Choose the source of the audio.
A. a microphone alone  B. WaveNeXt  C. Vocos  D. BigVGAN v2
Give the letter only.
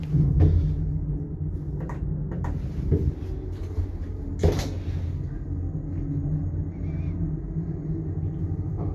A